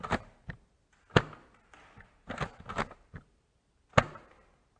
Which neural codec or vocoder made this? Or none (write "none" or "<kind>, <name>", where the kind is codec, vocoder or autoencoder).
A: none